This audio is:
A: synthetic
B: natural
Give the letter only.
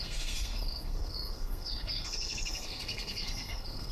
A